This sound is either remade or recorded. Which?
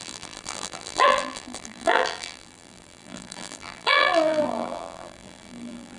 remade